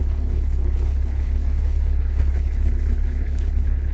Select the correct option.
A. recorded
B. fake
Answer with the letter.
B